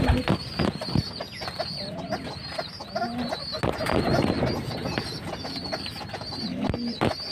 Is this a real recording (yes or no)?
yes